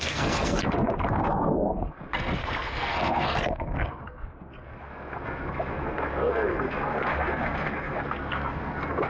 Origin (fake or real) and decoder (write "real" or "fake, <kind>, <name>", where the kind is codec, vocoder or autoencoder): fake, codec, SNAC